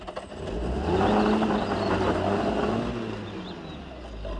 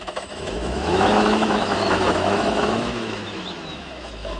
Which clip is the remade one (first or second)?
second